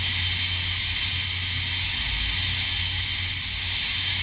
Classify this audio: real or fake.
real